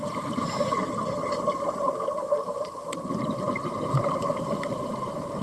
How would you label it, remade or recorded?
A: remade